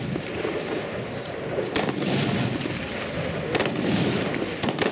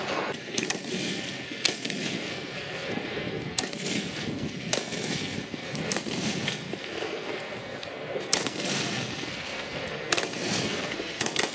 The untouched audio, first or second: first